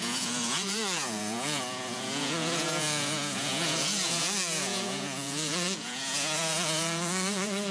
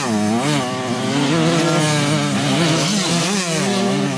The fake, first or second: first